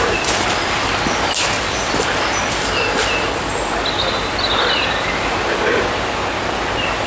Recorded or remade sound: recorded